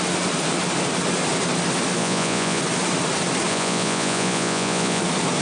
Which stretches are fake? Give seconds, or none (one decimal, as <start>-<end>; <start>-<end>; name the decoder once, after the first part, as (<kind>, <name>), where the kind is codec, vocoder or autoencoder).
2.0-2.6 (vocoder, Vocos); 3.5-5.0